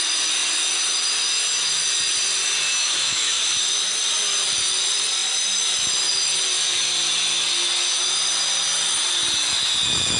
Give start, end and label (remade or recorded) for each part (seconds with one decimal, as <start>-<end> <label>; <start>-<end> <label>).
0.0-2.8 recorded; 2.8-3.4 remade; 3.4-10.2 recorded